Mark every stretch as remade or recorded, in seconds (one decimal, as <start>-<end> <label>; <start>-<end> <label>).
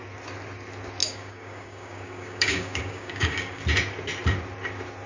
0.0-1.0 recorded; 1.0-3.6 remade; 3.6-5.1 recorded